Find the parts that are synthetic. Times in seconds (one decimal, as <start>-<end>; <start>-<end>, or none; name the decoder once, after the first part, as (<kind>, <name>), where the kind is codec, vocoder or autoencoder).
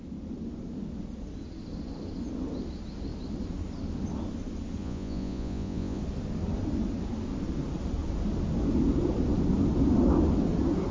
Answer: 4.8-6.0 (vocoder, Vocos)